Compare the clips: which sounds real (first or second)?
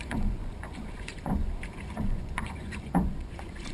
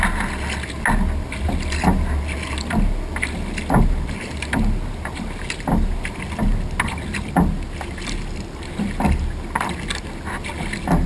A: second